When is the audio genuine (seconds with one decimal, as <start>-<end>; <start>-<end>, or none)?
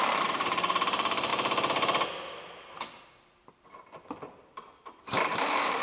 1.3-4.8